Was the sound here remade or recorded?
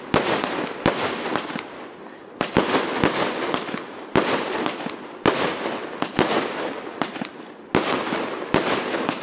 recorded